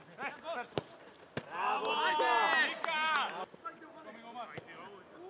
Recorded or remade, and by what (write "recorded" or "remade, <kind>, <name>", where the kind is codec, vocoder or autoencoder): recorded